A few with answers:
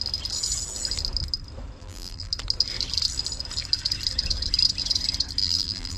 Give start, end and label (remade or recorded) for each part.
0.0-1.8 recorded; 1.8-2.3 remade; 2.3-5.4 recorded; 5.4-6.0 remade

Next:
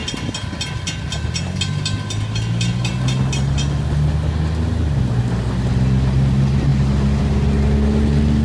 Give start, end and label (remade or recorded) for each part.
0.0-8.4 recorded

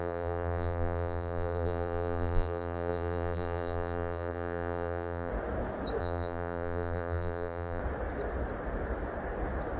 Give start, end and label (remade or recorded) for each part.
0.0-5.3 remade; 5.3-6.0 recorded; 6.0-7.8 remade; 7.8-9.8 recorded

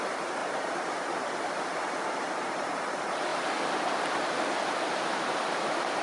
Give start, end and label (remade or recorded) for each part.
0.0-3.3 remade; 3.3-4.1 recorded; 4.1-6.0 remade

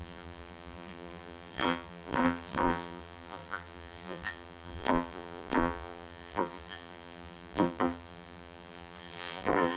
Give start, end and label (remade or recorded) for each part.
0.0-9.8 remade

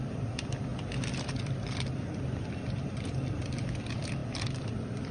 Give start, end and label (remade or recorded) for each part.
0.0-0.7 remade; 0.7-1.3 recorded; 1.3-5.1 remade